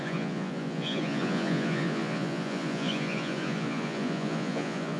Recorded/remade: remade